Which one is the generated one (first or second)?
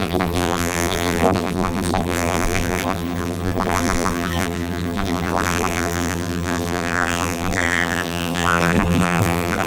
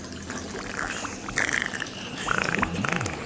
first